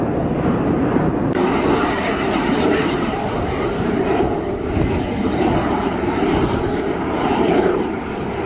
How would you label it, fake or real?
fake